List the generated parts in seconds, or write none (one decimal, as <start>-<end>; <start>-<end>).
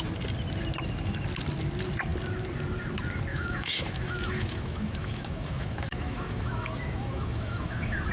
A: 3.3-8.1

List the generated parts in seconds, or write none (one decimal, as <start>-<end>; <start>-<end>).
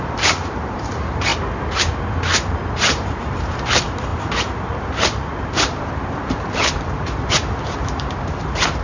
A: 0.0-1.3; 3.2-8.8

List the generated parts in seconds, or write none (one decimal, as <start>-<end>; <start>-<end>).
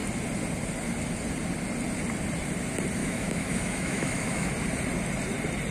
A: 3.0-4.5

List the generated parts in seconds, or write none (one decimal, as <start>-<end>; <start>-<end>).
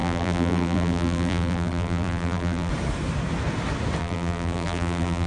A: 0.0-2.7; 4.0-5.3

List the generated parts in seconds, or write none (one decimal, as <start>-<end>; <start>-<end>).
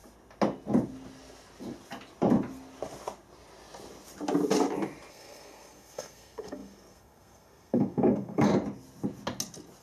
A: 5.1-8.5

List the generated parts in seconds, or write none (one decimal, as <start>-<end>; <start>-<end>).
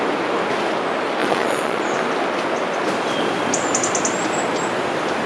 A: 1.2-1.8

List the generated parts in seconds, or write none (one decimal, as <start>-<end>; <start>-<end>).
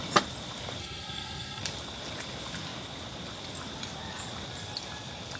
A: 0.8-1.6